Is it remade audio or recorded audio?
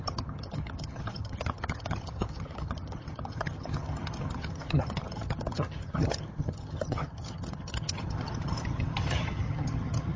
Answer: remade